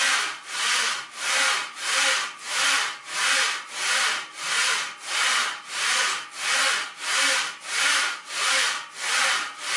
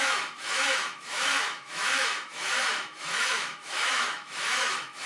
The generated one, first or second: second